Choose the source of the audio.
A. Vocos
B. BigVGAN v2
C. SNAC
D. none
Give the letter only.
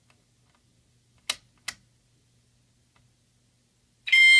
D